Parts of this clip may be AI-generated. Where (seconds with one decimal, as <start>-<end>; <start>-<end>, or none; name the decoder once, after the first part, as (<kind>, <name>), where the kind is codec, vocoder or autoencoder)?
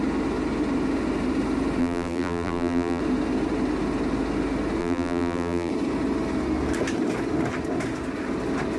1.8-3.0 (vocoder, BigVGAN v2); 4.8-5.7